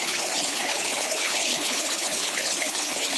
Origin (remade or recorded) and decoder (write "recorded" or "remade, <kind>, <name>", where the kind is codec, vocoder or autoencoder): remade, codec, HILCodec